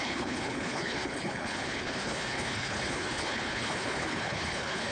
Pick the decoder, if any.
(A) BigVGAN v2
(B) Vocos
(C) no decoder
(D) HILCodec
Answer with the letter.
D